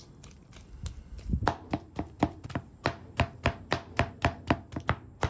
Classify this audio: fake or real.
real